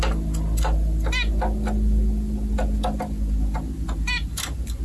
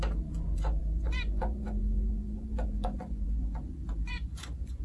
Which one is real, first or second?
first